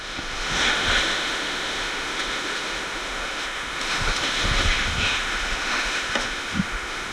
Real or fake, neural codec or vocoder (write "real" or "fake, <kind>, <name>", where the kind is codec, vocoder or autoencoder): fake, autoencoder, DAC-VAE